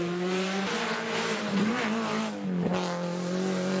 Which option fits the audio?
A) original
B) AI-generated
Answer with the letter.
A